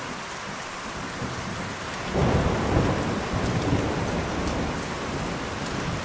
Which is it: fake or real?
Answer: real